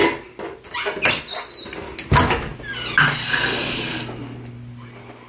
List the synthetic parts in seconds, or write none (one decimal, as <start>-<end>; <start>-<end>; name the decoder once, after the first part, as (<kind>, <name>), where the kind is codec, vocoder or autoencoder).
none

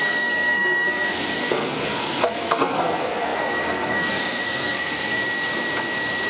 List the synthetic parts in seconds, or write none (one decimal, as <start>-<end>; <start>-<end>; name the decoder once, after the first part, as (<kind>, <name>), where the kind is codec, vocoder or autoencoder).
0.0-5.2 (codec, SNAC)

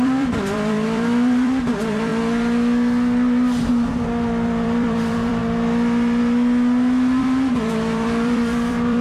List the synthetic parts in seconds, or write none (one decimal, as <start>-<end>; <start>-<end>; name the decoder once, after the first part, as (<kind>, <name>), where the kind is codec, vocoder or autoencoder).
0.0-2.1 (vocoder, BigVGAN v2); 3.7-5.4; 7.2-9.0